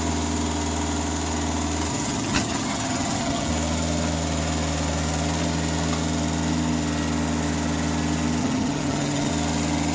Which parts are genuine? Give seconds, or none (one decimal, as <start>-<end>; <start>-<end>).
0.0-1.9; 3.5-8.4; 9.3-9.9